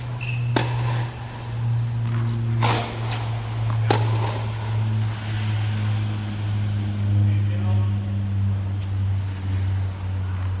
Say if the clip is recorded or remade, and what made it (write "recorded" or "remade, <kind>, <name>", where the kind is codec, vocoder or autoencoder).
recorded